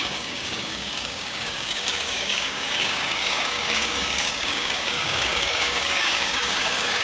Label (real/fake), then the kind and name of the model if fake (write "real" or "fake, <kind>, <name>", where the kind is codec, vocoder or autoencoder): fake, codec, DAC